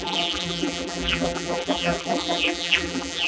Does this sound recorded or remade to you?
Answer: remade